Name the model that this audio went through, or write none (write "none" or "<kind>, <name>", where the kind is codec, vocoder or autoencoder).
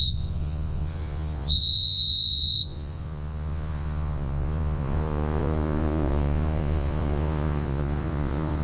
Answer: vocoder, Vocos